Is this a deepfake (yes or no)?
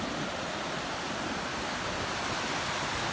no